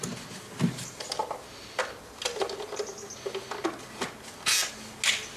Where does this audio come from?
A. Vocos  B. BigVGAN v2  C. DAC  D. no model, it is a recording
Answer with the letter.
D